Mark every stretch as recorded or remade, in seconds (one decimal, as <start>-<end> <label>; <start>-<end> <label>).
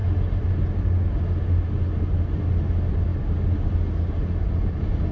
0.0-5.1 recorded